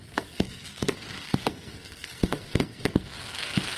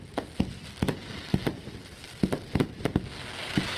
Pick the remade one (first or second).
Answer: first